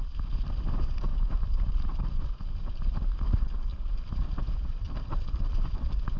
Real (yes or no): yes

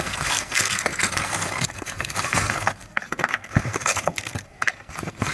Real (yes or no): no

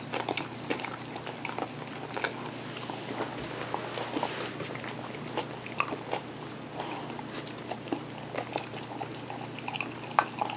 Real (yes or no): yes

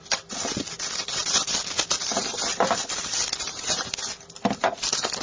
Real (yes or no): yes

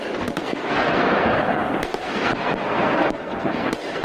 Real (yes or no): no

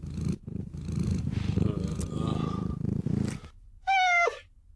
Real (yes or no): yes